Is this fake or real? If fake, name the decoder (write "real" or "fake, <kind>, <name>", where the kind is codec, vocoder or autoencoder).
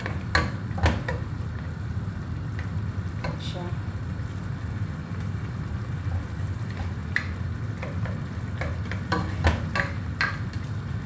real